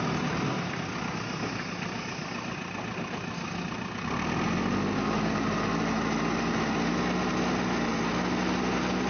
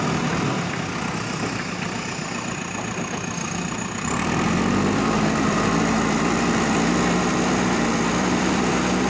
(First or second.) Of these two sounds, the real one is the first